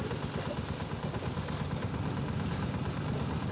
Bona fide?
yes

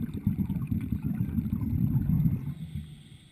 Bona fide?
yes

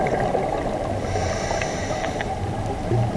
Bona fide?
yes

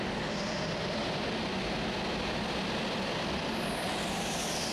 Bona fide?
yes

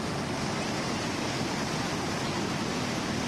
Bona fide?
yes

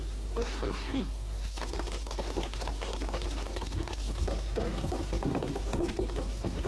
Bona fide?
no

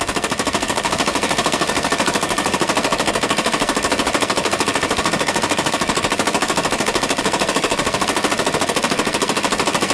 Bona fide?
no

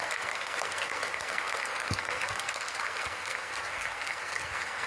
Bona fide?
no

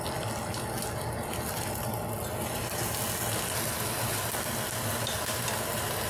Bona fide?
yes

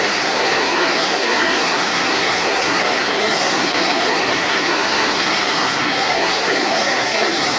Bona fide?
no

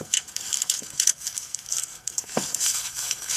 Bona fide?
no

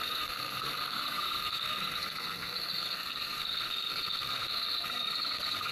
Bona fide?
no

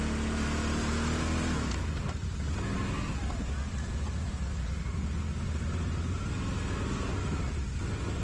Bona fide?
yes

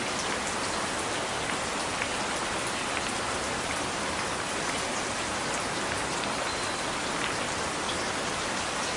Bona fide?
yes